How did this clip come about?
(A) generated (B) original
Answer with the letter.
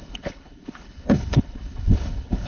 A